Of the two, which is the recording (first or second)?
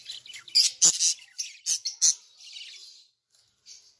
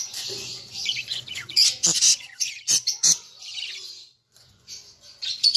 first